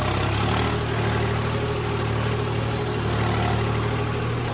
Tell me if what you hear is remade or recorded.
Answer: recorded